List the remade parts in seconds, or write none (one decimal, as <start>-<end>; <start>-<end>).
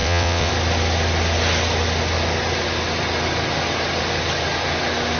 0.0-0.5